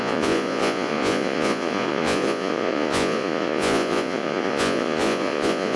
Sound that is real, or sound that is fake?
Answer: fake